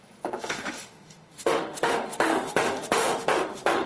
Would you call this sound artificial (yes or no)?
yes